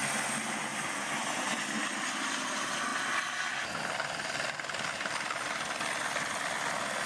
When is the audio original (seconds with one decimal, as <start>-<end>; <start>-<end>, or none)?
0.0-7.1